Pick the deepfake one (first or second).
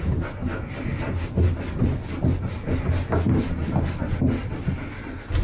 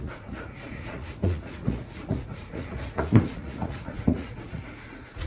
second